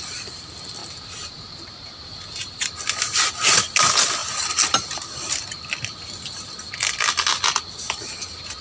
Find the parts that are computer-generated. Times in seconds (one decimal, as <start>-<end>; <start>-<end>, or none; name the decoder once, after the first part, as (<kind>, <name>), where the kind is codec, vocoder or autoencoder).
0.8-2.7 (vocoder, BigVGAN v2)